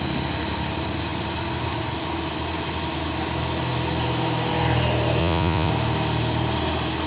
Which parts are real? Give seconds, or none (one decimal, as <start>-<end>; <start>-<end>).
0.0-5.2; 5.7-7.1